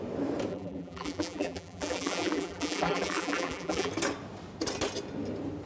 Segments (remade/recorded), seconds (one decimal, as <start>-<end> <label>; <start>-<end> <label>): 0.0-0.5 recorded; 0.5-3.9 remade; 3.9-5.7 recorded